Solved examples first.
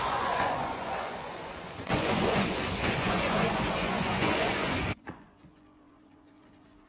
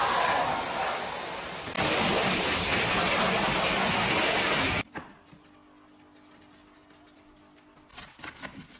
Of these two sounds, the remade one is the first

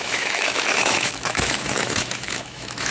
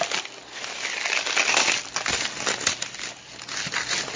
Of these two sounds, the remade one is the first